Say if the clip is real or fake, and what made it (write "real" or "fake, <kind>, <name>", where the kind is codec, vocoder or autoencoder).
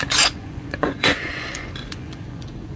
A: fake, vocoder, Vocos